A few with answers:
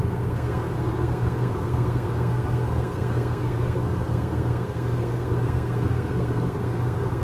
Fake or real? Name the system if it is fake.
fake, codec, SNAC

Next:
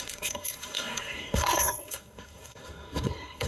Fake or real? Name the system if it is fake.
fake, codec, SNAC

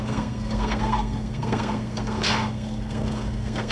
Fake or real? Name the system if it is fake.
fake, codec, SNAC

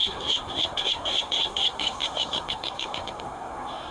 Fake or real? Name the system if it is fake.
fake, codec, SNAC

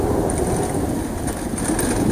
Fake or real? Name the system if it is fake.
real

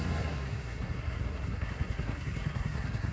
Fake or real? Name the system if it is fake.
fake, codec, SNAC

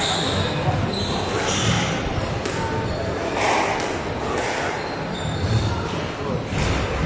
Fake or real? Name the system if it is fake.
real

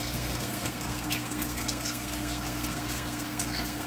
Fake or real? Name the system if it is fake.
fake, codec, SNAC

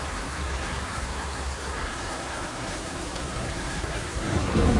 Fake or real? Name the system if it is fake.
fake, codec, SNAC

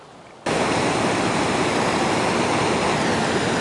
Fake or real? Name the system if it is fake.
real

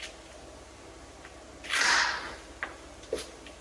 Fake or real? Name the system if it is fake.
real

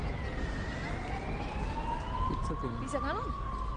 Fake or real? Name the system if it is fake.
real